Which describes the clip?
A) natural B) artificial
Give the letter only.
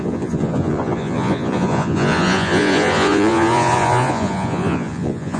B